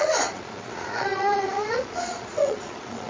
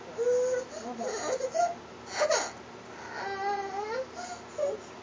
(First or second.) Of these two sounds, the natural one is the second